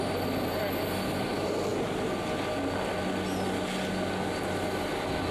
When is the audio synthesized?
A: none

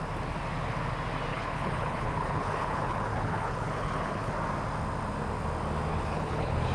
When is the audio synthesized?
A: 1.3-4.3 (codec, HILCodec); 5.9-6.7